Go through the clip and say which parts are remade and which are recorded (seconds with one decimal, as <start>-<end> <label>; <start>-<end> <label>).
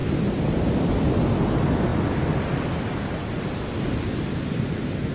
0.0-5.1 recorded